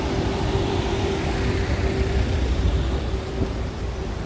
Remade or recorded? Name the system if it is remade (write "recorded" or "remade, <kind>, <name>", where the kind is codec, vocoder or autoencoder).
remade, vocoder, BigVGAN v2